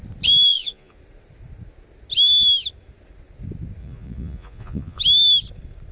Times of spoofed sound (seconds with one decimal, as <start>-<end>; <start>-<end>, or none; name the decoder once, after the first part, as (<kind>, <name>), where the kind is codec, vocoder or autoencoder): 0.5-1.0 (vocoder, Vocos); 3.8-5.0